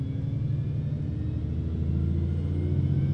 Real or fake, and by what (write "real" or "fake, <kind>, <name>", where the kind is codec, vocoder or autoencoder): real